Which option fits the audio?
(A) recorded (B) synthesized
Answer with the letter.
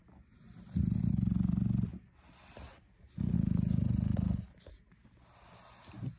A